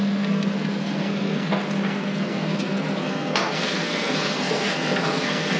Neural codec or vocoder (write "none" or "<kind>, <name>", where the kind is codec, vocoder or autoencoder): codec, SNAC